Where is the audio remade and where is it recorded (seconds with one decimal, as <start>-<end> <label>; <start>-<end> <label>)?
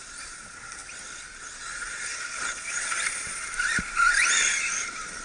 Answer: 0.0-0.8 remade; 0.8-1.9 recorded; 1.9-3.7 remade; 3.7-4.3 recorded; 4.3-5.2 remade